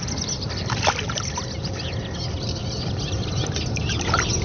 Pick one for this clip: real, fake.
fake